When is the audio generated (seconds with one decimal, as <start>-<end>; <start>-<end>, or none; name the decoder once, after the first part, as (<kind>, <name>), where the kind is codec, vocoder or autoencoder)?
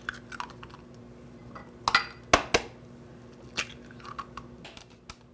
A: none